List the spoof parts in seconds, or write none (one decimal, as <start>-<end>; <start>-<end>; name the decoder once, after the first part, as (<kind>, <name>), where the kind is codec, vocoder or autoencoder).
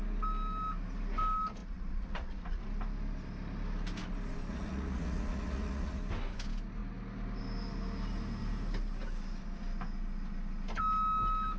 1.6-2.6 (vocoder, Vocos); 4.5-6.0